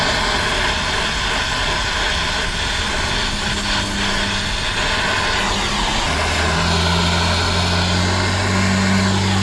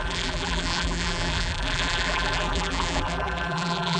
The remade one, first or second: second